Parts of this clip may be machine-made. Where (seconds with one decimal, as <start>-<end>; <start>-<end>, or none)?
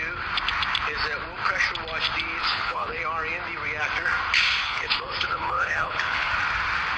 2.4-3.0; 4.6-6.3